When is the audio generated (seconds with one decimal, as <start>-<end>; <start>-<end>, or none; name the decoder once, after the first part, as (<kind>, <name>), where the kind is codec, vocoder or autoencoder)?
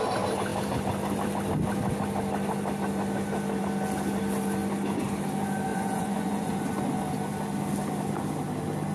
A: 5.7-6.5 (vocoder, Vocos)